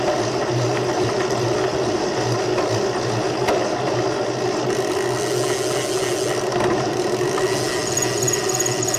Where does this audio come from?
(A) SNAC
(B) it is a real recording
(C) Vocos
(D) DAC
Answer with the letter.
B